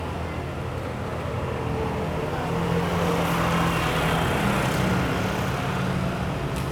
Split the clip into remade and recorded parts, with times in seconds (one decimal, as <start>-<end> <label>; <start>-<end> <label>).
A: 0.0-6.7 recorded